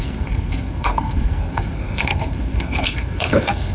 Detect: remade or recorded remade